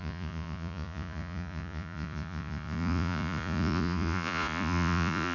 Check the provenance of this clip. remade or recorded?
remade